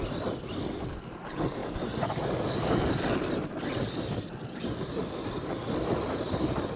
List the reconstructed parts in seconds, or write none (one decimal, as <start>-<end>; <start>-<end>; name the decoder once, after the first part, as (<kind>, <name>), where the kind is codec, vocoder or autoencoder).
none